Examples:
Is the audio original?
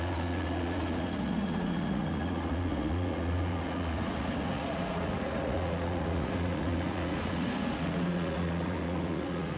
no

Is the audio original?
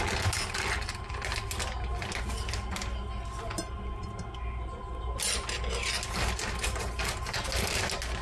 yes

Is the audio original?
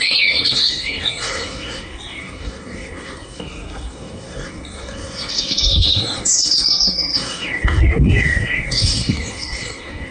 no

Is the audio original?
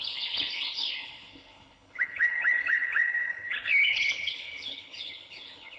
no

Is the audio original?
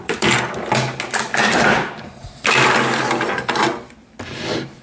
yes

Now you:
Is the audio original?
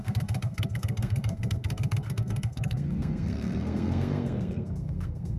no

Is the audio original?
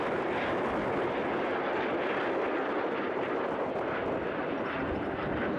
yes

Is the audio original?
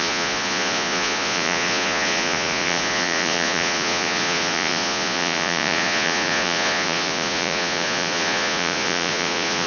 no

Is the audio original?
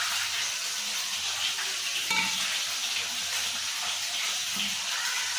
yes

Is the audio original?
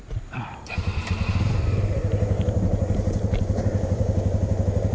no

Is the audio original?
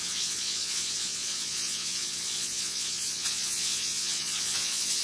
no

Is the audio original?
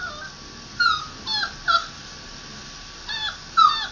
yes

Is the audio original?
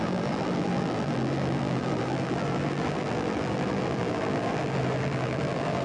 no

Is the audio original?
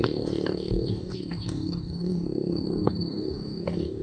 no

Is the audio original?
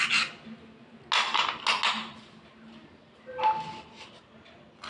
yes